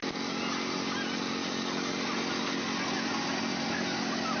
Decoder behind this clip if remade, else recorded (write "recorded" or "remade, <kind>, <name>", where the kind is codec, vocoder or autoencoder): recorded